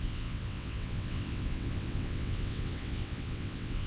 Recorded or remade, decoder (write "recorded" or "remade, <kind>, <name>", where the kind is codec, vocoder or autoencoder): remade, vocoder, WaveNeXt